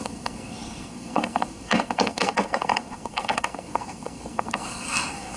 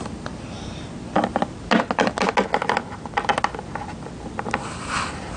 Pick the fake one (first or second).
first